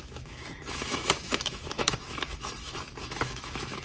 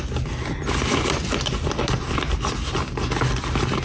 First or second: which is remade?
first